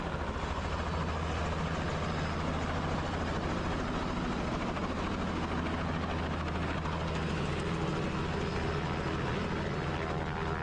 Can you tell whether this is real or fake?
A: real